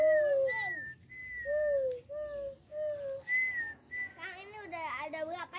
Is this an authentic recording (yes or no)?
yes